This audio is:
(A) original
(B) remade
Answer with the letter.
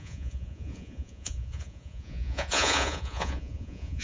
B